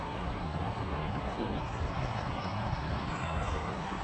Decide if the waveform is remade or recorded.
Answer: remade